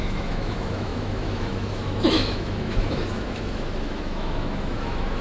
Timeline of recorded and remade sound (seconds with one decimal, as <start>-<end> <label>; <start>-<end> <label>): 0.0-5.2 remade